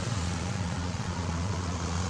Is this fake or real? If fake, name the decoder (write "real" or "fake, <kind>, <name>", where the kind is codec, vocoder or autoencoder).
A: fake, vocoder, Vocos